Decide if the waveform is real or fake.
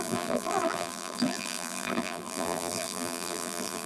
fake